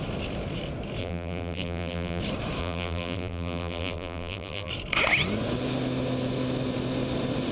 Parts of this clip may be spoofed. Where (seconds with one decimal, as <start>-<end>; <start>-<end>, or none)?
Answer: 1.0-2.2; 2.6-4.7